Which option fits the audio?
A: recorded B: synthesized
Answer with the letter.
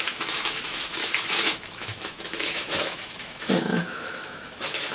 B